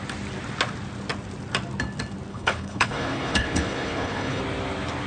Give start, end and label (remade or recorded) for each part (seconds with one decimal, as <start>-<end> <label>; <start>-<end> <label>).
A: 0.0-2.3 recorded; 2.3-4.4 remade; 4.4-5.1 recorded